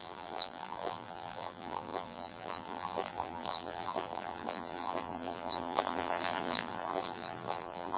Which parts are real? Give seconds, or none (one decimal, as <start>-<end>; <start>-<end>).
none